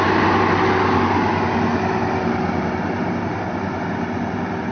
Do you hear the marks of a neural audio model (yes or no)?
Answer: no